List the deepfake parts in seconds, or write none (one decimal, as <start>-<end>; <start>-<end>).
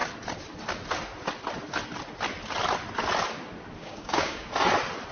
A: 3.8-4.5